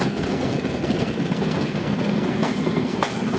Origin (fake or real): fake